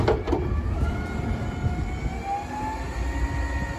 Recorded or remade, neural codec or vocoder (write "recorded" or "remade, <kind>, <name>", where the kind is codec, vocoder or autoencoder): recorded